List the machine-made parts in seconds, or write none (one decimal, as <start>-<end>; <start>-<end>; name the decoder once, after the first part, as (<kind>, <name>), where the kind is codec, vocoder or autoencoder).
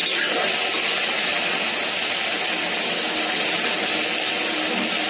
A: none